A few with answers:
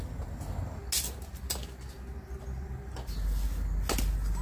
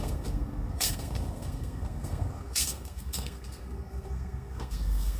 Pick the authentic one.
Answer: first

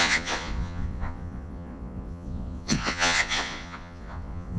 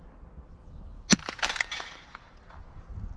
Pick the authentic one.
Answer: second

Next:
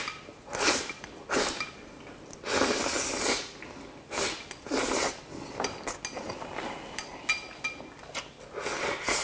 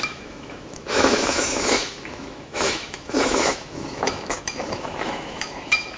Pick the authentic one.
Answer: first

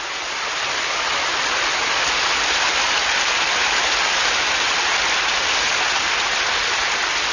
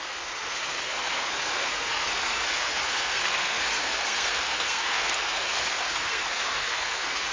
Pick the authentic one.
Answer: first